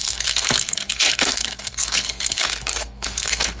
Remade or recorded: remade